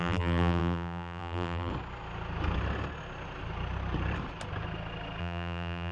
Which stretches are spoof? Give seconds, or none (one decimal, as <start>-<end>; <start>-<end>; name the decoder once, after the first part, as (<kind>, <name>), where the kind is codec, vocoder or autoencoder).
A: 0.0-1.7 (vocoder, BigVGAN v2); 5.2-5.9

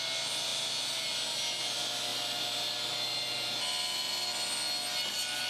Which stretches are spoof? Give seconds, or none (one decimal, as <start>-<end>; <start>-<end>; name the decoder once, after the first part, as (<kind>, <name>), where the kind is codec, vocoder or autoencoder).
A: none